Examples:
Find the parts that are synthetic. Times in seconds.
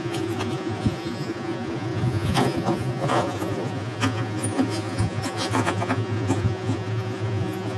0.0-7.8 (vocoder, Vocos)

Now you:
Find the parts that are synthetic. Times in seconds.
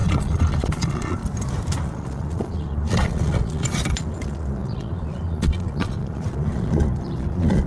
0.0-1.2 (vocoder, Vocos); 1.8-7.7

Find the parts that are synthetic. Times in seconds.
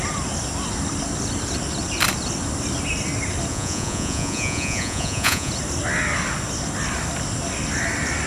3.5-5.5 (vocoder, Vocos)